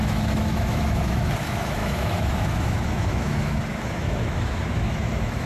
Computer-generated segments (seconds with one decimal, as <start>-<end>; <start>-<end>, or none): 0.0-5.5